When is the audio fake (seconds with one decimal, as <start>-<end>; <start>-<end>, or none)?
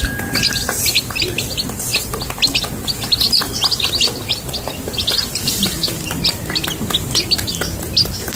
1.9-2.4; 3.4-6.7